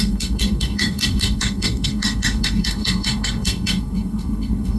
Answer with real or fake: fake